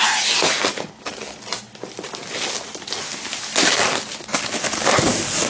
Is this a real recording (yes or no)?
yes